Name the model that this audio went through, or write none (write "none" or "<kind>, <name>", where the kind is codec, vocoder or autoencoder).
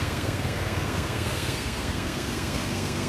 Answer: codec, SNAC